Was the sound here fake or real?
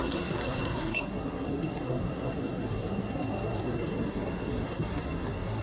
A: fake